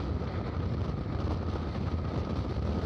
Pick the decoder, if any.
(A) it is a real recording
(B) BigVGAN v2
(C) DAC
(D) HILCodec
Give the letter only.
A